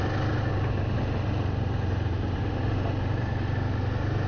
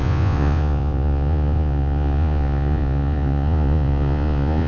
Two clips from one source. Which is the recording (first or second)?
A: first